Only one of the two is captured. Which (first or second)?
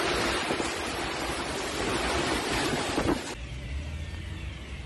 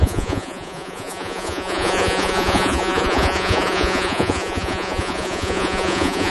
first